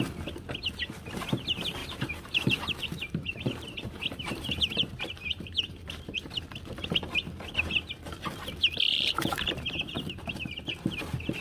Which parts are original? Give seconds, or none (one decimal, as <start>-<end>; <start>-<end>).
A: 0.0-1.8; 6.4-8.9; 11.0-11.4